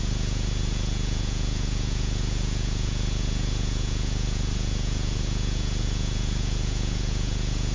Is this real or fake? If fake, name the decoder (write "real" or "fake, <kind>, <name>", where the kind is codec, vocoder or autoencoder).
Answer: fake, vocoder, Vocos